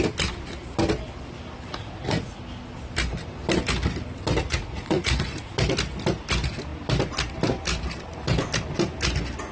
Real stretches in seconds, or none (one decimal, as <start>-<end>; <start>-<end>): 0.0-1.7; 2.4-4.4; 5.5-9.5